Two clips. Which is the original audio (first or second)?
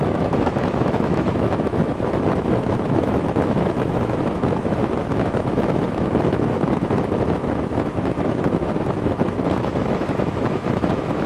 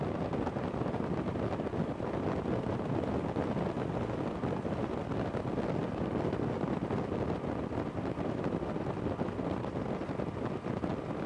second